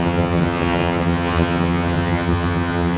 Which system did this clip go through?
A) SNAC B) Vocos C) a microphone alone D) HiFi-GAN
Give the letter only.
D